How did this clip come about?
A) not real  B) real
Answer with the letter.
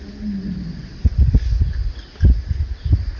B